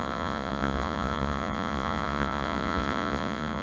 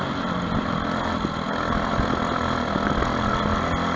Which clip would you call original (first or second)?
second